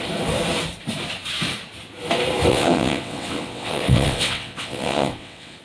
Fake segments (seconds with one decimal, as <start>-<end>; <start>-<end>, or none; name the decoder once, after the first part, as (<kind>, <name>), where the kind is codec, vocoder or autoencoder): 2.5-5.6 (vocoder, WaveNeXt)